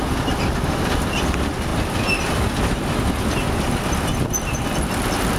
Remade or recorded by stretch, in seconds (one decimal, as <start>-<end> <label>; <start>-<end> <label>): 0.0-5.4 recorded